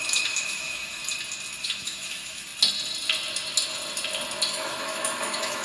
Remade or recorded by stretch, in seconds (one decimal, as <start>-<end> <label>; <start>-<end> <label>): 0.0-1.0 remade; 1.0-1.6 recorded; 1.6-2.5 remade; 2.5-4.5 recorded; 4.5-5.6 remade